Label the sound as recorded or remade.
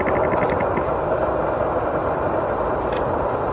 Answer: recorded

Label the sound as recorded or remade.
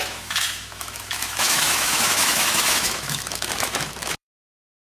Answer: remade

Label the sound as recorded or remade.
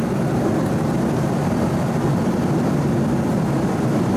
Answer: recorded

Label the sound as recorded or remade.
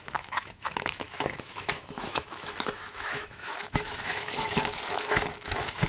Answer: remade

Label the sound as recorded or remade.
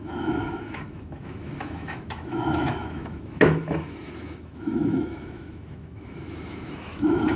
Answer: remade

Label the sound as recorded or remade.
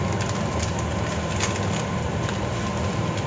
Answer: recorded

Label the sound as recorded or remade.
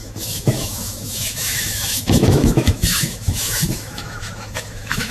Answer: remade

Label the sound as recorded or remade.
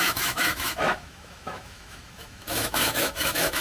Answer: remade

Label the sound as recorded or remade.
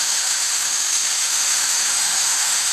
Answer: remade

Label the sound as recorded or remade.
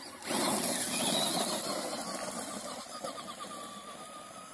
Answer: recorded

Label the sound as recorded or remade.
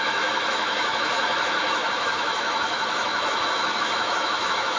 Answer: remade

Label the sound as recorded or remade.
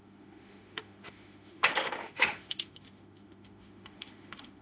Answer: remade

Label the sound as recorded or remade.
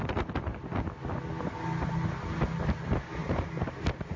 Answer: recorded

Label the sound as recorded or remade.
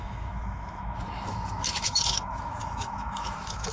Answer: remade